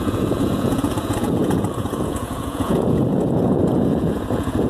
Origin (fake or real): fake